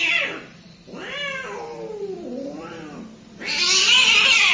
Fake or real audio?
fake